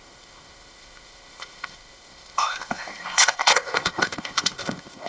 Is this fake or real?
fake